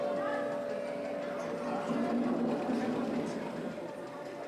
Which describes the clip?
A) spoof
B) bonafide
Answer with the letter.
B